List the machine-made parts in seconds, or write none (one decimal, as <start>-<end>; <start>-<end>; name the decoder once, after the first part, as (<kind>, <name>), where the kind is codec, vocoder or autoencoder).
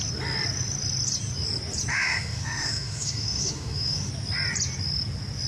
1.9-4.1 (autoencoder, DAC-VAE)